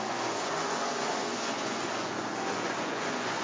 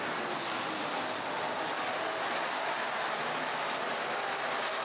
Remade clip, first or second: first